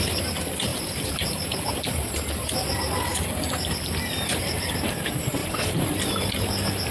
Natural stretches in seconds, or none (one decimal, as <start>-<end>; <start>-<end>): 0.0-0.7; 4.8-5.4; 6.1-6.9